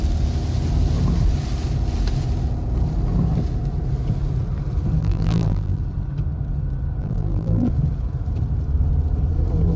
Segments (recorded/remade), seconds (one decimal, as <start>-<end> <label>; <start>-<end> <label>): 0.0-5.0 recorded; 5.0-5.8 remade; 5.8-7.0 recorded; 7.0-7.7 remade; 7.7-9.8 recorded